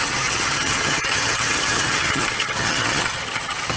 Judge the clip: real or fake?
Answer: fake